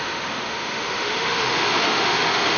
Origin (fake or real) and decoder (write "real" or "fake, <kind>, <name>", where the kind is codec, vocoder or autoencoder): fake, autoencoder, DAC-VAE